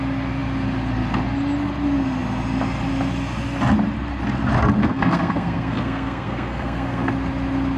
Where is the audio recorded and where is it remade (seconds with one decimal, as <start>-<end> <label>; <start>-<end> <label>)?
0.0-4.8 recorded; 4.8-7.1 remade; 7.1-7.8 recorded